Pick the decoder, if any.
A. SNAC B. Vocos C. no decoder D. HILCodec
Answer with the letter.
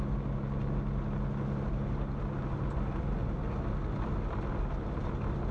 C